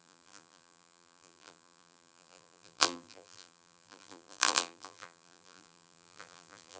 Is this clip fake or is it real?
fake